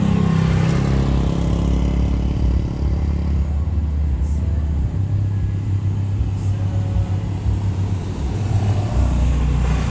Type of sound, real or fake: real